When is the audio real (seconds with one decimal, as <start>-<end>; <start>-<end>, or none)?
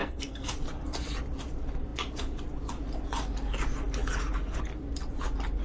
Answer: 0.5-5.6